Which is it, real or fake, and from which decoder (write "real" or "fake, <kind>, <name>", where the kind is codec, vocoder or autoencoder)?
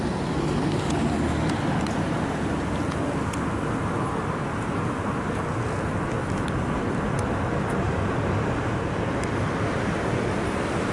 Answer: real